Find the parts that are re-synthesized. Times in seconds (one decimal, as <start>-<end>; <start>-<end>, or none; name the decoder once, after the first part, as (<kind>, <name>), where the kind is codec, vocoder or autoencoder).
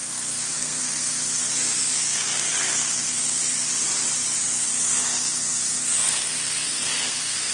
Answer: 0.0-3.4 (codec, SNAC); 4.6-7.5